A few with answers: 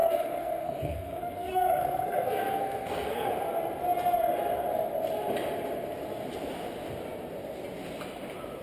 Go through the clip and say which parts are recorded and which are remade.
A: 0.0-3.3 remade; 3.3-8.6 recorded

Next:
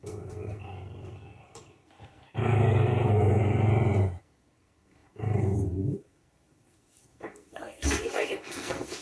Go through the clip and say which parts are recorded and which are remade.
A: 0.0-3.7 remade; 3.7-4.2 recorded; 4.2-9.0 remade